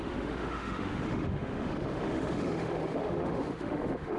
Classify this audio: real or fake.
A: fake